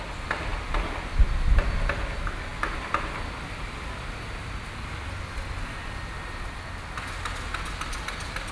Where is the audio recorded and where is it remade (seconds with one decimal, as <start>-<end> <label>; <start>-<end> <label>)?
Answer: 0.0-8.5 recorded